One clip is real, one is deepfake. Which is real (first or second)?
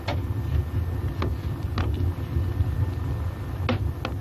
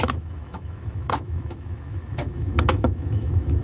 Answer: first